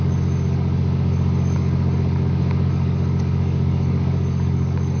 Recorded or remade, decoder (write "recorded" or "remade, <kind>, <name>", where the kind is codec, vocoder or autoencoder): remade, codec, DAC